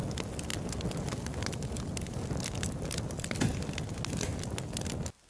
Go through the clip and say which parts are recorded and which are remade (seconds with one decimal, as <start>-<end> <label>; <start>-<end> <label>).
0.0-5.3 recorded